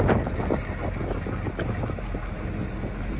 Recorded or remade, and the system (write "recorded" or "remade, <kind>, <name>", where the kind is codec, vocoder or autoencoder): recorded